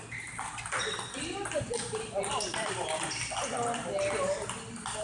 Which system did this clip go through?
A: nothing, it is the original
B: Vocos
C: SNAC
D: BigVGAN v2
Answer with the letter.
A